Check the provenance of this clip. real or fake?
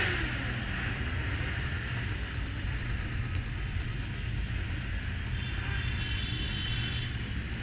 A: real